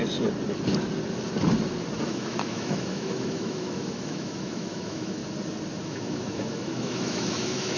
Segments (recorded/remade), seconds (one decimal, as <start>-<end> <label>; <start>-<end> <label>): 0.0-2.0 recorded; 2.0-5.2 remade; 5.2-5.8 recorded; 5.8-7.8 remade